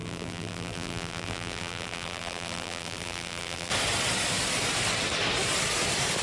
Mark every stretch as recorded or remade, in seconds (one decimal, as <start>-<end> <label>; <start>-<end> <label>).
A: 0.0-3.7 remade; 3.7-6.2 recorded